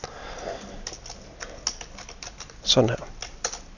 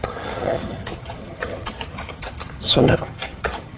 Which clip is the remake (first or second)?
second